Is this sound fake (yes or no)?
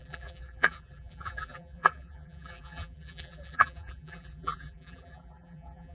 yes